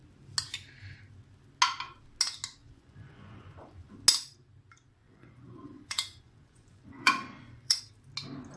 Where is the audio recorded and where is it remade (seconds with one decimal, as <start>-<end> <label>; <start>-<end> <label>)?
0.0-2.6 recorded; 2.6-3.9 remade; 3.9-5.0 recorded; 5.0-7.8 remade; 7.8-8.6 recorded